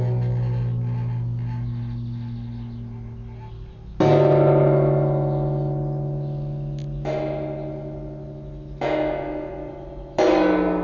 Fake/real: real